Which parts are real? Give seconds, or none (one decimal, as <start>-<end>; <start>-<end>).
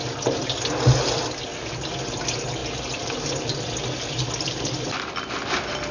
0.0-5.9